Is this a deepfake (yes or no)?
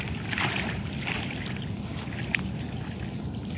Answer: no